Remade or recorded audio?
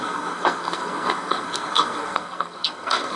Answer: remade